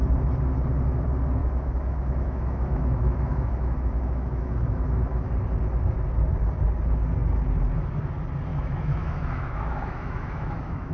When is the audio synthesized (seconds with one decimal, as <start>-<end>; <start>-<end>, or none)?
1.4-5.3; 8.5-10.9